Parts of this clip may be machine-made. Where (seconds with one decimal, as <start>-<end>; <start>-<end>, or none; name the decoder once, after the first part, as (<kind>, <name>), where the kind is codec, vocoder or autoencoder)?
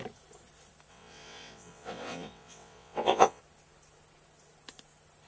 0.9-3.4 (vocoder, WaveNeXt)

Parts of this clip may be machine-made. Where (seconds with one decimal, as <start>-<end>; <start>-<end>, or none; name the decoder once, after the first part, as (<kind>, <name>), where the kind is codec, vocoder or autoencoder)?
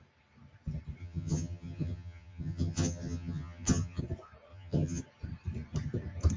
1.0-4.0 (vocoder, HiFi-GAN); 4.5-5.0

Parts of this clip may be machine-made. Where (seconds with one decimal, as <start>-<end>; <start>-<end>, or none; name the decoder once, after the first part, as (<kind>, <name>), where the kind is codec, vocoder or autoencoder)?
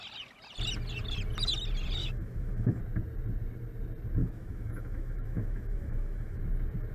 2.0-2.8 (autoencoder, DAC-VAE); 4.2-6.4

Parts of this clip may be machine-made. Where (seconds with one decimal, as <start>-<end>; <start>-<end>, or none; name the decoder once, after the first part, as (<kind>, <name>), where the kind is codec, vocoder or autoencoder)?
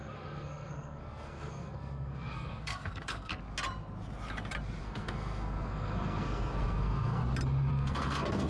0.0-3.3 (codec, SNAC); 4.8-7.2; 7.7-8.5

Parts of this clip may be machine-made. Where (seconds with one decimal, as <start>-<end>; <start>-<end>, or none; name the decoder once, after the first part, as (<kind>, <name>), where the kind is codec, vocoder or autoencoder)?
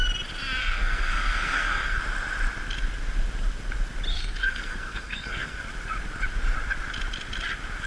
0.6-2.0 (codec, SNAC); 4.1-5.6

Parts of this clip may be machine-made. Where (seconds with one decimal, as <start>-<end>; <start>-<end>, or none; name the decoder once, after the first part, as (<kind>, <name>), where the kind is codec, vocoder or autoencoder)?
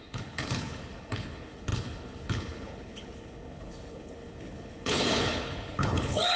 0.0-6.4 (codec, HILCodec)